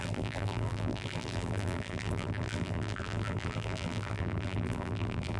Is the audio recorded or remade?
remade